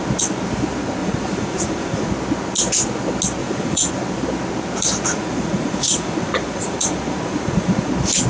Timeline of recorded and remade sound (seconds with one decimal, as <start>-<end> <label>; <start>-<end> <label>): 0.0-1.0 recorded; 1.0-2.1 remade; 2.1-3.4 recorded; 3.4-3.9 remade; 3.9-5.1 recorded; 5.1-7.9 remade; 7.9-8.3 recorded